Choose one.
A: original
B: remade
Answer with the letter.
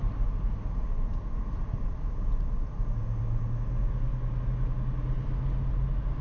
A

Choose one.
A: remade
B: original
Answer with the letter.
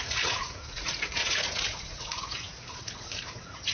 A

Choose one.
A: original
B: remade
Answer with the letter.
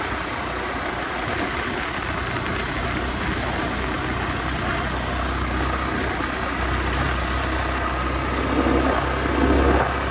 A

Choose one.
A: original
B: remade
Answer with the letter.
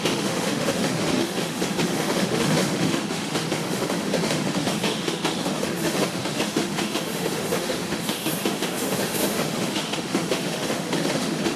B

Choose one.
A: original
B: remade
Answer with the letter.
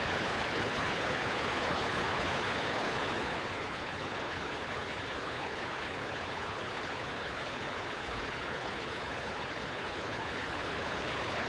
B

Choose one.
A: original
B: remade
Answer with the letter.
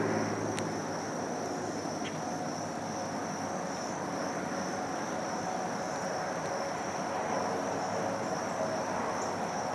A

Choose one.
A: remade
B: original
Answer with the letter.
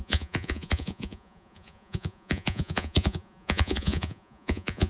A